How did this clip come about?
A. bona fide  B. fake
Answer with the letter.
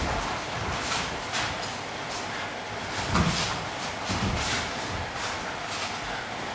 A